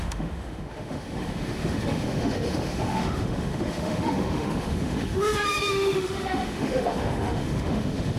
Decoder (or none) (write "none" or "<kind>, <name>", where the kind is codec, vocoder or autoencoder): autoencoder, DAC-VAE